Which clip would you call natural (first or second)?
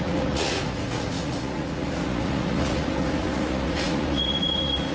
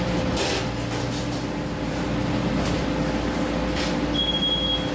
second